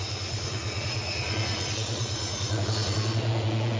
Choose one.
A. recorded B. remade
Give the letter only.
B